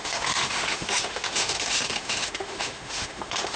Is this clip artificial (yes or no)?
yes